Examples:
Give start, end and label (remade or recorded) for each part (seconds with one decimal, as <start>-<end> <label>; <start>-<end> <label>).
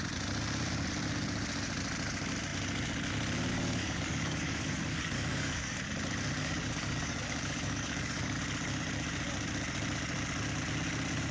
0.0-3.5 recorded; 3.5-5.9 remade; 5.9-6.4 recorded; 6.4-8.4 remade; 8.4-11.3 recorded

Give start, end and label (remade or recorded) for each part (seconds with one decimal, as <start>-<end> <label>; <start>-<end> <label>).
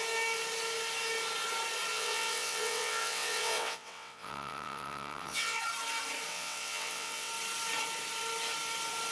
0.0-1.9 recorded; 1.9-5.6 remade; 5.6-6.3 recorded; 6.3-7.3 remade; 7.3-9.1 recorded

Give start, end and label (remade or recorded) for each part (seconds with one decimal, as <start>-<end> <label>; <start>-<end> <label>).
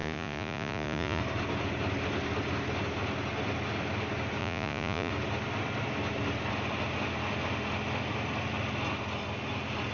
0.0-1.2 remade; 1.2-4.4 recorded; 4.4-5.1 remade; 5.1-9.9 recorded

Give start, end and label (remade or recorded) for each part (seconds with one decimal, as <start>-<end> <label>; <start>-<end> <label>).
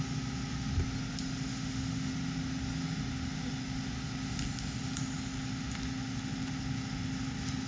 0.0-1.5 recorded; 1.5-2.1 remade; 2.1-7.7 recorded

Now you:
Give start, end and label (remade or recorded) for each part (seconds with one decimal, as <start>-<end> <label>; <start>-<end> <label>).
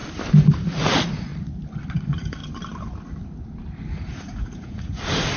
0.0-0.5 recorded; 0.5-1.3 remade; 1.3-1.9 recorded; 1.9-2.4 remade; 2.4-3.9 recorded; 3.9-5.4 remade